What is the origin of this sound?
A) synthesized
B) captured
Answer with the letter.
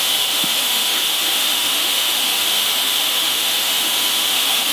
A